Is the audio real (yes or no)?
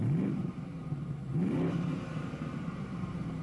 no